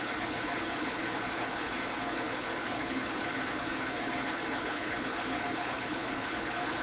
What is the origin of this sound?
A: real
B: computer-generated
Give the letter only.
B